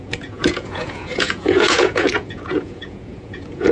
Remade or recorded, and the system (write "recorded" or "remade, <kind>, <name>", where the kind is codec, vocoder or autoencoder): remade, vocoder, Vocos